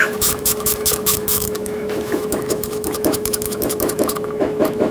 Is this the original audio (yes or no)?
no